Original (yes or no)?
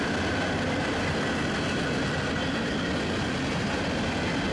yes